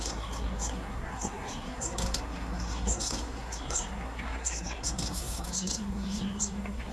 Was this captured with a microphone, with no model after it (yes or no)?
no